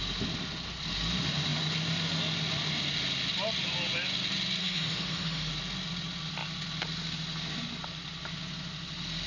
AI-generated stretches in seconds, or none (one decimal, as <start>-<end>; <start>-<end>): 4.6-5.5